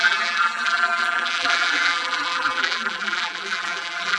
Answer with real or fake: fake